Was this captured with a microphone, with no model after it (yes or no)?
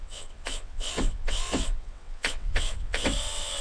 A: no